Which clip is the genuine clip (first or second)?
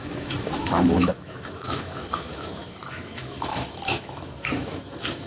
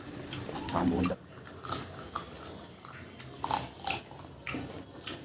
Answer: second